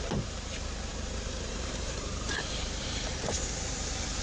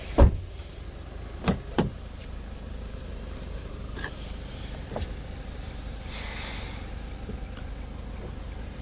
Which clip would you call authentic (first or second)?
second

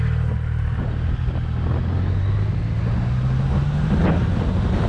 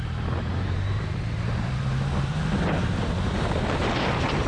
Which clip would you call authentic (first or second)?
first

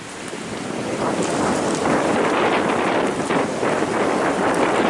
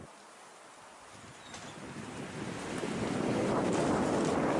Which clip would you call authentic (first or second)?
second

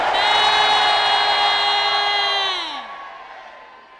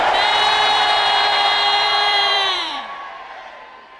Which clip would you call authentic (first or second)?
first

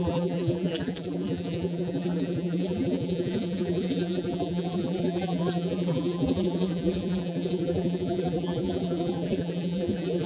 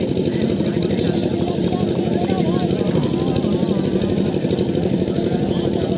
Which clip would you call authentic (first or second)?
second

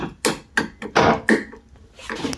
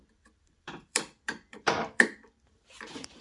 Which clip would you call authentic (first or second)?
first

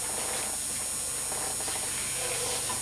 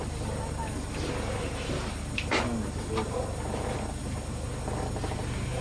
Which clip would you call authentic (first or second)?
first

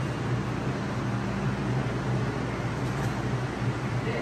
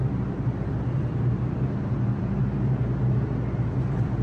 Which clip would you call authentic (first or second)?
first